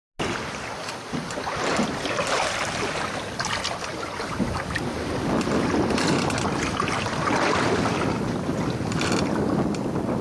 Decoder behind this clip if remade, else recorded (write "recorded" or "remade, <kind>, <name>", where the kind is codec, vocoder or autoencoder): recorded